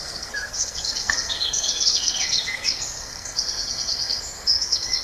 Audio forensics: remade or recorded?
remade